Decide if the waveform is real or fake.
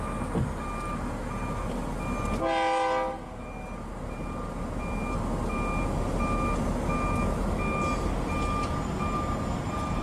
real